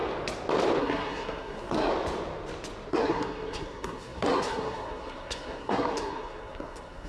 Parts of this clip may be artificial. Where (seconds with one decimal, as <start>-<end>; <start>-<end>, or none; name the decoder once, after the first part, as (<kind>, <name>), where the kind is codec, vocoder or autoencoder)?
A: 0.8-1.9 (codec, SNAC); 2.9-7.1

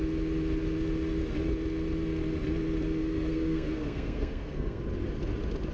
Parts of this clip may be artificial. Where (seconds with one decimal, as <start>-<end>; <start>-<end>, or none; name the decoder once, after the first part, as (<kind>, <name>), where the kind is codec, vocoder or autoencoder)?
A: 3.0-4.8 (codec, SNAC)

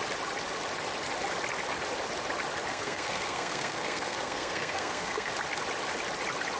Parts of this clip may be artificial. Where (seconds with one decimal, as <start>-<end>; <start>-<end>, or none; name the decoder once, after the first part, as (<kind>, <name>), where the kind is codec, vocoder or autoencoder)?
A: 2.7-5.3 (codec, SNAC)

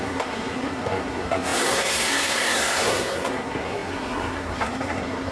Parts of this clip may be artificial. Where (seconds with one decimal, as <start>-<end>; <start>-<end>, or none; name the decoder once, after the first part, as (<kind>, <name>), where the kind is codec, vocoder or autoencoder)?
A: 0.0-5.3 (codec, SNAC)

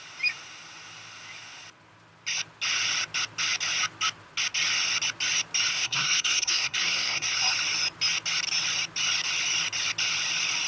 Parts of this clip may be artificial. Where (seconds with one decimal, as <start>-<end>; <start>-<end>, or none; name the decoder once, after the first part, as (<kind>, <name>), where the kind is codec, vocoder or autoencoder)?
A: 5.7-7.4 (codec, SNAC)

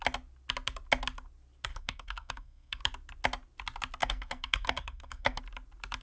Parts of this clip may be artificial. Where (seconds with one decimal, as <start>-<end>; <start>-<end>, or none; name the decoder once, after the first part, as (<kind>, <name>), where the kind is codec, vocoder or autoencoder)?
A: 1.7-2.8 (codec, SNAC); 4.0-5.4

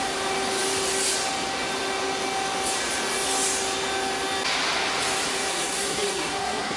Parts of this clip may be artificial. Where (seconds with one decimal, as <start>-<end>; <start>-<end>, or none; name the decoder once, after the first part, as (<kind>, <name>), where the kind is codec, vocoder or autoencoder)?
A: 5.5-6.8 (codec, SNAC)

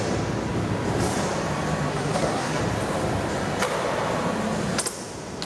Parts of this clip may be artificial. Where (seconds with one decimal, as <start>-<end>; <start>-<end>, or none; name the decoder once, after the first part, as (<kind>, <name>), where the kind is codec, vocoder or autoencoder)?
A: 1.9-2.6 (codec, SNAC)